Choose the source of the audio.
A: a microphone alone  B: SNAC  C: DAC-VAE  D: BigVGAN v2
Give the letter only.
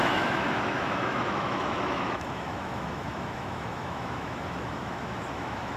C